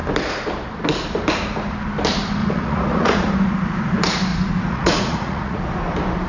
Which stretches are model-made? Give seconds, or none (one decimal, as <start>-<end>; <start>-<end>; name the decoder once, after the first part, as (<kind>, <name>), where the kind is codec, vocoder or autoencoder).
2.4-3.3 (vocoder, Vocos); 4.3-5.6